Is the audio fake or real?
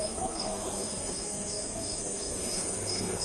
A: fake